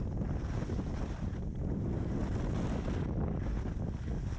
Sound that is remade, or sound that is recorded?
recorded